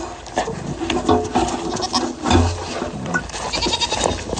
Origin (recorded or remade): recorded